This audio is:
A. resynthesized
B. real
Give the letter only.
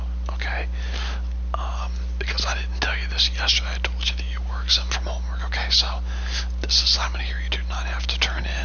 B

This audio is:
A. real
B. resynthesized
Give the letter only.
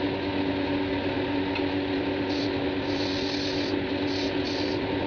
A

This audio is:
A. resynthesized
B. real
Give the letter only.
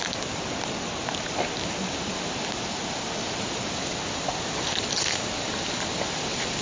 B